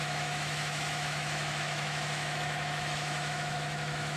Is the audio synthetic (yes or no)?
yes